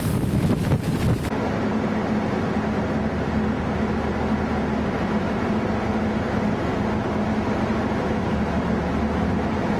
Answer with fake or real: real